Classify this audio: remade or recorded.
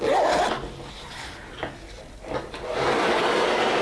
recorded